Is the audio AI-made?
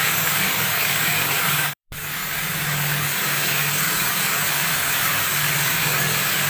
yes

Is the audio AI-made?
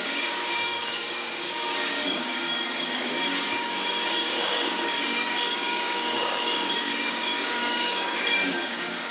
yes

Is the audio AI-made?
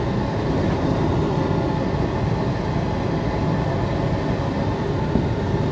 no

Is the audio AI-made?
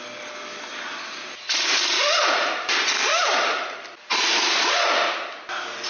no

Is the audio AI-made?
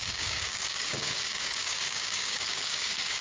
yes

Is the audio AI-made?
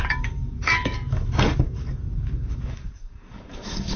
yes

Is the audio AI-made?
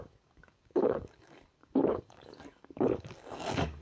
yes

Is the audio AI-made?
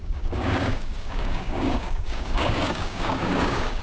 yes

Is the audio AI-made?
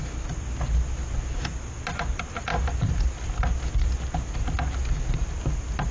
no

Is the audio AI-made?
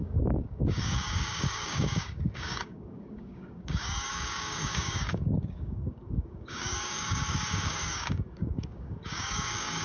yes